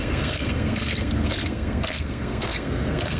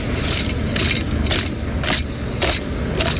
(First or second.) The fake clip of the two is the first